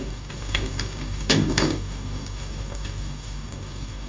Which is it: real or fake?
fake